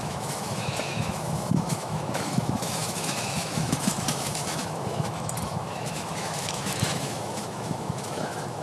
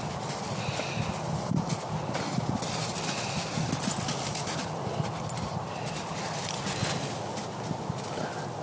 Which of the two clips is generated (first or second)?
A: first